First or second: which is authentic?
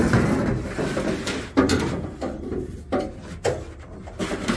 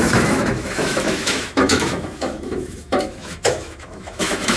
first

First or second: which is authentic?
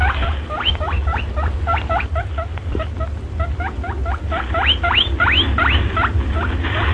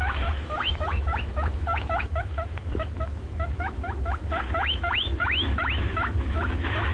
first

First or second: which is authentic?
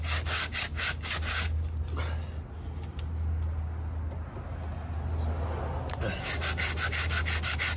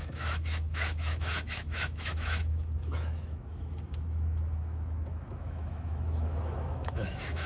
first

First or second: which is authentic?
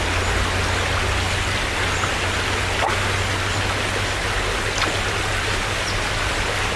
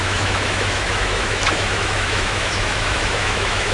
first